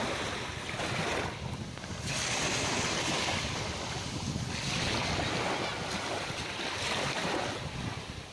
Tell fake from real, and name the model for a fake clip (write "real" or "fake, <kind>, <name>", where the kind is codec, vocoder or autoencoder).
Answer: real